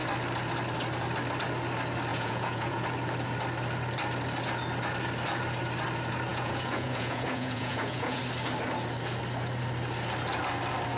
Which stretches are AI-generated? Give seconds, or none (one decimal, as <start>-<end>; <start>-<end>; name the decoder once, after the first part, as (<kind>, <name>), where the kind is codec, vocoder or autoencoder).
2.1-2.8 (vocoder, Vocos); 6.3-8.2